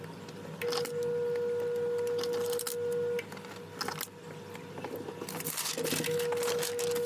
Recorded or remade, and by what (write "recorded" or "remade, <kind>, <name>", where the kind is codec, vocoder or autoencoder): recorded